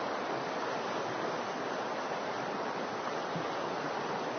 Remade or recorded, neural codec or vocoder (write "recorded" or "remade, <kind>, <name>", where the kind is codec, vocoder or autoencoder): recorded